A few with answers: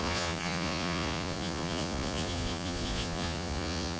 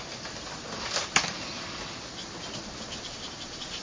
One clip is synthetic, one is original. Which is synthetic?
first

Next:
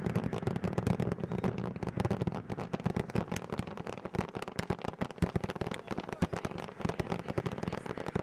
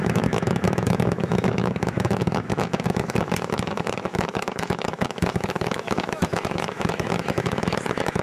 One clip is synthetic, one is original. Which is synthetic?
second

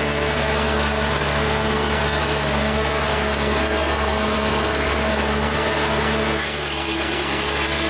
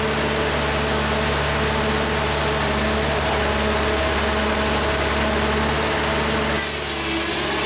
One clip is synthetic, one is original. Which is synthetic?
first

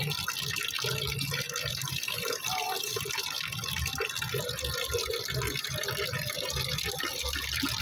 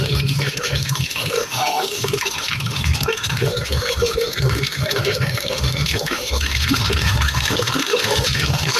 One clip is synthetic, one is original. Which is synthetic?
second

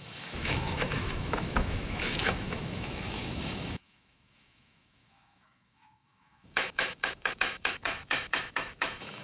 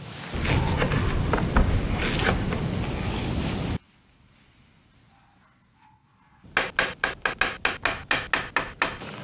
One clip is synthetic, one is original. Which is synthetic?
first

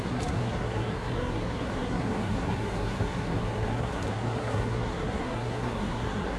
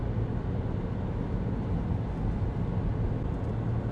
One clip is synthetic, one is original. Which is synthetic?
first